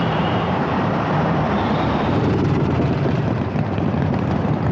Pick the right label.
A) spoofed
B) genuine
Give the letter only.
A